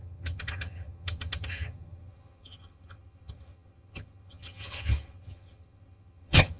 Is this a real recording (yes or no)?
no